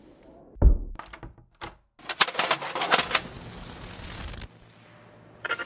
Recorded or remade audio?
recorded